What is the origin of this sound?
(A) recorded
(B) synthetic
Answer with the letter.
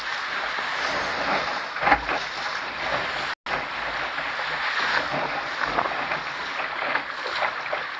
A